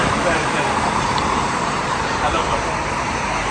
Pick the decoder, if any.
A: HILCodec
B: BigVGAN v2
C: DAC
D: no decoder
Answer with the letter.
B